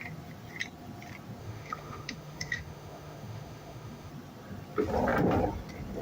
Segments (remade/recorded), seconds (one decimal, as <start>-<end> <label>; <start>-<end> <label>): 0.0-1.4 recorded; 1.4-4.1 remade; 4.1-6.0 recorded